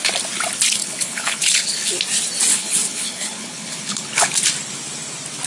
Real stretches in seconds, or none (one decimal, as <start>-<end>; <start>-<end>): 0.0-0.8; 1.9-2.5; 4.3-5.5